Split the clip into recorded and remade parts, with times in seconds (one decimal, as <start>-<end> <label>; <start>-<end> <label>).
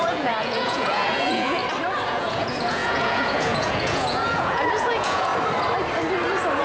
0.0-1.6 remade; 1.6-2.1 recorded; 2.1-5.3 remade; 5.3-6.6 recorded